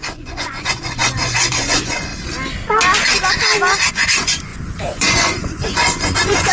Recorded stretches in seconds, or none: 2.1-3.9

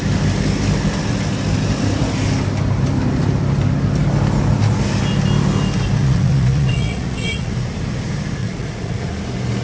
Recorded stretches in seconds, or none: 0.0-6.0; 7.5-8.4; 9.0-9.6

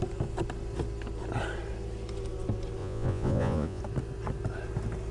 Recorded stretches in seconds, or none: 0.0-2.8; 3.8-5.1

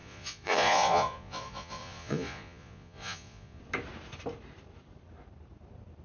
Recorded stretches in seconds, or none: 3.6-6.0

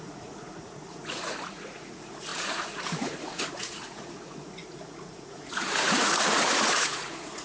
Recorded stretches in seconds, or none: none

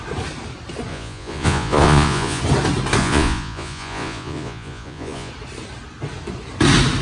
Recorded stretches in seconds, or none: 0.0-0.9; 2.4-3.0; 5.3-7.0

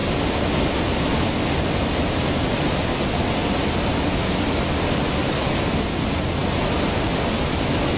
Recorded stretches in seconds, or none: 0.0-8.0

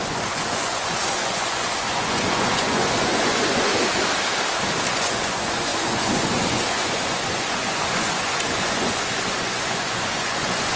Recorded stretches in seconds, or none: 3.7-4.9